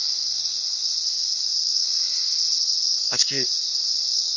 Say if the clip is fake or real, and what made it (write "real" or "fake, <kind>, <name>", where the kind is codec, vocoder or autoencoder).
fake, codec, SNAC